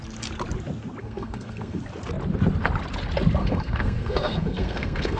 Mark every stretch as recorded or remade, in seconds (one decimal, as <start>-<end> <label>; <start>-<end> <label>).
0.0-1.0 recorded; 1.0-1.8 remade; 1.8-3.4 recorded; 3.4-5.2 remade